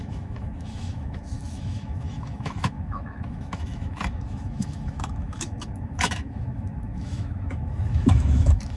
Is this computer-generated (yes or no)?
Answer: yes